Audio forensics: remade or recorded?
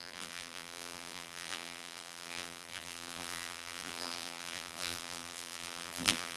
remade